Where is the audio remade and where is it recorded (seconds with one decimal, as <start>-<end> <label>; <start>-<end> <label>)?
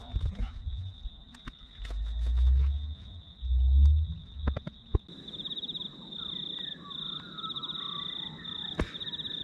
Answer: 0.0-9.4 recorded